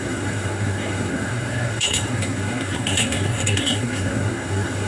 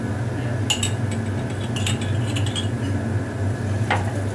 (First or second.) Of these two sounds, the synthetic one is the first